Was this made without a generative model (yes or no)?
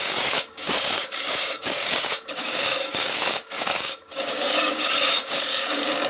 no